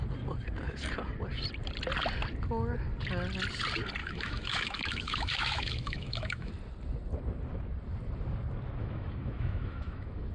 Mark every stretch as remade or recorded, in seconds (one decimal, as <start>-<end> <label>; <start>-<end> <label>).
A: 0.0-4.0 recorded; 4.0-6.5 remade; 6.5-8.8 recorded; 8.8-10.3 remade